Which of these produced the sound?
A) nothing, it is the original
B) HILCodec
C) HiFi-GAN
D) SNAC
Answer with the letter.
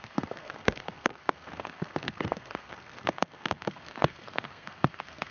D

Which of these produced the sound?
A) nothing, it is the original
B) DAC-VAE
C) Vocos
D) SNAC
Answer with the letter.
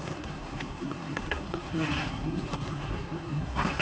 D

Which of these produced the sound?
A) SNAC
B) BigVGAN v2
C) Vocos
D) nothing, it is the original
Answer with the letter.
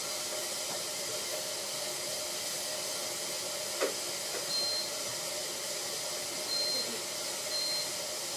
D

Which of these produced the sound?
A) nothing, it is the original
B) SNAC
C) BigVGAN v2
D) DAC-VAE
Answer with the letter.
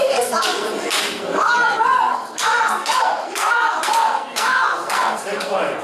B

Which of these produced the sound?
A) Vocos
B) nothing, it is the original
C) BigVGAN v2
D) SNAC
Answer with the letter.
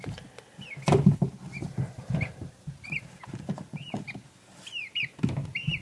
B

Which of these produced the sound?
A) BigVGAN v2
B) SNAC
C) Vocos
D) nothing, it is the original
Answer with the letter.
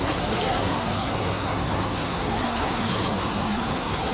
B